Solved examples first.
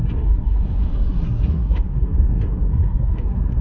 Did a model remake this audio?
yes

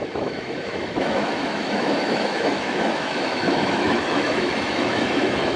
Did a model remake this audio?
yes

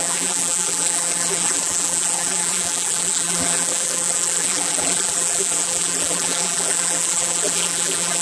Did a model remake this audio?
yes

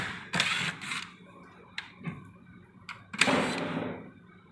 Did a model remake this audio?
no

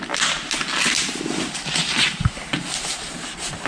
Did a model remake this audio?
no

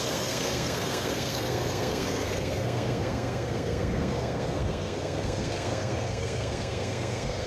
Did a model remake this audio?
yes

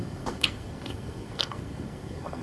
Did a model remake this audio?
yes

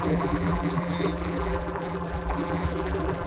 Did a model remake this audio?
yes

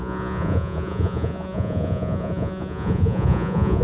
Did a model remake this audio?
yes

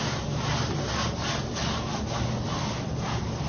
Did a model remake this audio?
no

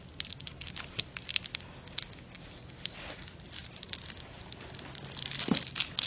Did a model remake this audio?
no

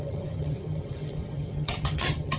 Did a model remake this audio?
yes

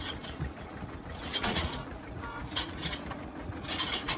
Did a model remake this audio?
yes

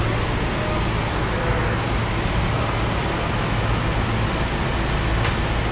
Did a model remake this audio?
no